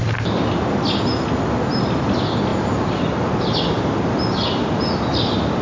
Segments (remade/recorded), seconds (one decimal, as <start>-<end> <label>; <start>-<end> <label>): 0.0-5.6 recorded